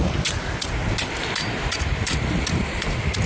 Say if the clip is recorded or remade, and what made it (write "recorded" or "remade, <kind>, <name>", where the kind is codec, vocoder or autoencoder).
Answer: recorded